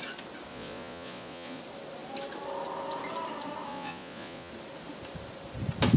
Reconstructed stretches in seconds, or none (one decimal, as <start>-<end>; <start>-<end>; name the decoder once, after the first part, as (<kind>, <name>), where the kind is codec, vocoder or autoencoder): 0.5-1.6 (vocoder, Vocos); 3.7-4.5